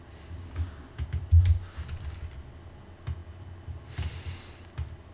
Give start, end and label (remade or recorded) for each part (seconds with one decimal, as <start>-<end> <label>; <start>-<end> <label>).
0.0-5.1 recorded